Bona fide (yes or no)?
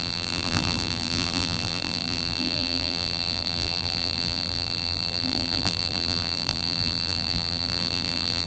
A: no